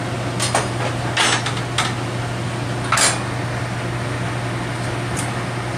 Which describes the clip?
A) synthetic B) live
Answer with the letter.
B